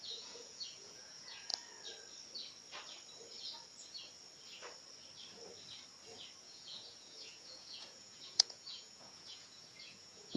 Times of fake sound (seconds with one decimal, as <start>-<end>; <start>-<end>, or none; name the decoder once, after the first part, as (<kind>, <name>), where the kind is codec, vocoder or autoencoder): 0.0-1.5 (vocoder, Vocos); 6.4-10.4